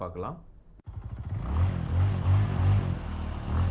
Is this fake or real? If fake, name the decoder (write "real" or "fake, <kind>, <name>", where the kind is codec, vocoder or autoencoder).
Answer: real